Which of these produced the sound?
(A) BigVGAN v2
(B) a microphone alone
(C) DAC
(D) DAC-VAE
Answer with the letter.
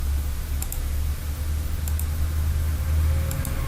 B